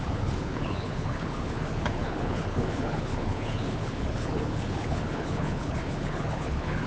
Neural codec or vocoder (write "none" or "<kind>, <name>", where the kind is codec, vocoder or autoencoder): codec, HILCodec